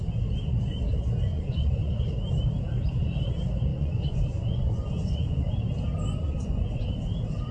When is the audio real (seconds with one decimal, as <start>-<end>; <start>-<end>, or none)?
0.0-1.3; 1.9-3.7; 5.5-6.2; 6.8-7.5